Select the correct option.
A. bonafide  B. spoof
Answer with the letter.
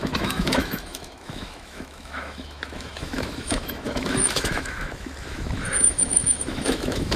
B